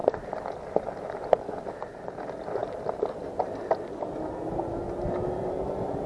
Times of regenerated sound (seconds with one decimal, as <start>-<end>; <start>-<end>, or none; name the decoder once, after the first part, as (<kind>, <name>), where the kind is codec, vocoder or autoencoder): none